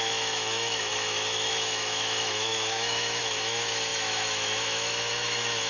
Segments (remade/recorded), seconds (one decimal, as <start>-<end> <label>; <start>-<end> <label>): 0.0-5.7 remade